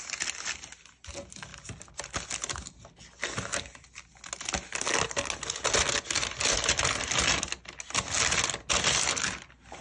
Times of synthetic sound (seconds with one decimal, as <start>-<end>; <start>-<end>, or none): none